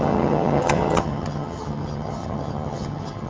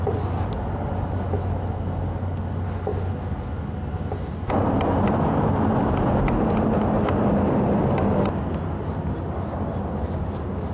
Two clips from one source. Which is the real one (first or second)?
second